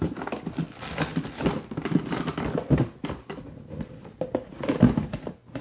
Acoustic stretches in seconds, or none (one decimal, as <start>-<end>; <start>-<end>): 0.0-5.6